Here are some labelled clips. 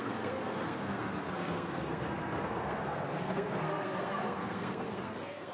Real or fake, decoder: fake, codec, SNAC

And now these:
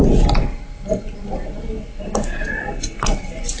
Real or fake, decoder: real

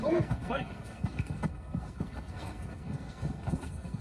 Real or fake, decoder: fake, codec, SNAC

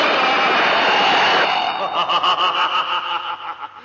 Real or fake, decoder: real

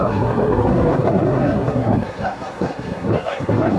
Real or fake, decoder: fake, codec, SNAC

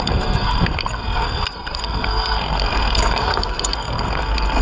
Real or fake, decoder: fake, codec, SNAC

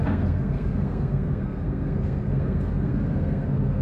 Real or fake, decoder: fake, codec, SNAC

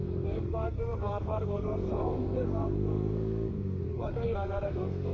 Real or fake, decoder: fake, codec, SNAC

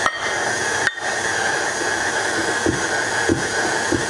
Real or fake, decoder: real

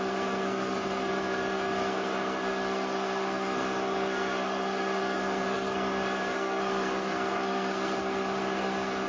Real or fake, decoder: fake, codec, SNAC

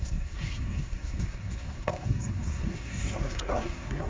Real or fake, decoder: fake, codec, SNAC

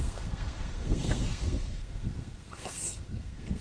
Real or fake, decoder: fake, codec, SNAC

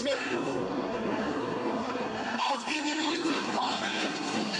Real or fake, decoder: fake, codec, SNAC